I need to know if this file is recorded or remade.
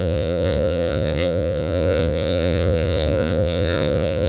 remade